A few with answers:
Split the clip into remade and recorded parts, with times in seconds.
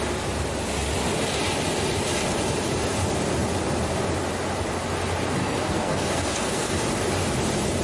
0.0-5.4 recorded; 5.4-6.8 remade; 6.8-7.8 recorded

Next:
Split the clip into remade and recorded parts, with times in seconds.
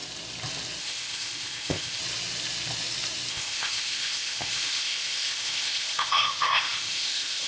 0.0-0.8 recorded; 0.8-2.0 remade; 2.0-3.3 recorded; 3.3-7.5 remade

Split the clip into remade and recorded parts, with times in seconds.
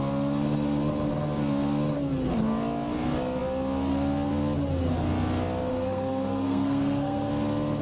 0.0-5.7 recorded; 5.7-7.3 remade; 7.3-7.8 recorded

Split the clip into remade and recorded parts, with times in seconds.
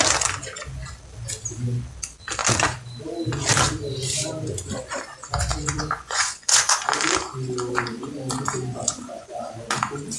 0.0-5.5 recorded; 5.5-6.9 remade; 6.9-8.7 recorded; 8.7-9.5 remade; 9.5-10.2 recorded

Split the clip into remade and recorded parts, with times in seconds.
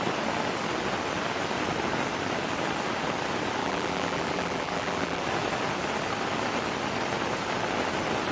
0.0-3.6 recorded; 3.6-5.2 remade; 5.2-8.3 recorded